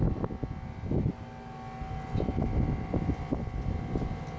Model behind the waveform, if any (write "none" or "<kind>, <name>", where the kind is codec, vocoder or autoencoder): none